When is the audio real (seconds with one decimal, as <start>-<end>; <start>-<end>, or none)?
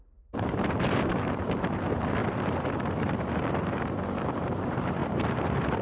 none